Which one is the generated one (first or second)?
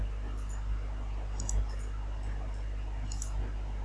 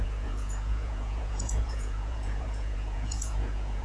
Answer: second